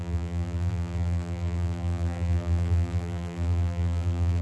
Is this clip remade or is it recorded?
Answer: remade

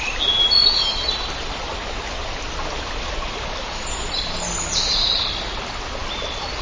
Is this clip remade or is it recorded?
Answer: recorded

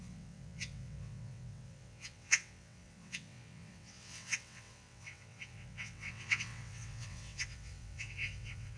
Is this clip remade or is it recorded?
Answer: remade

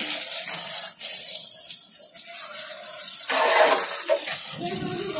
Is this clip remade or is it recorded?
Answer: recorded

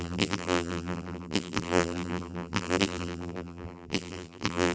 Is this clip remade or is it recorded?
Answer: remade